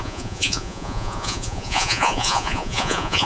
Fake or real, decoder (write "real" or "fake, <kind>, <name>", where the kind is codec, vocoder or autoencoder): fake, vocoder, Vocos